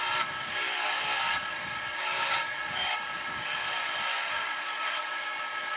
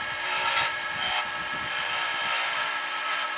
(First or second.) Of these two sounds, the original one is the second